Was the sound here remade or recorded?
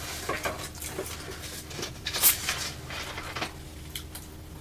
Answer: recorded